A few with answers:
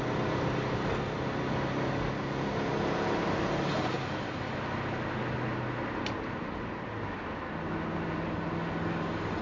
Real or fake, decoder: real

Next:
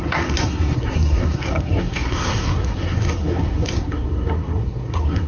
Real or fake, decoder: fake, codec, SNAC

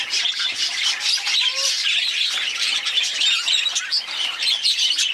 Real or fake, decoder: real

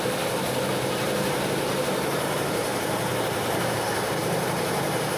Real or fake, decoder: fake, vocoder, BigVGAN v2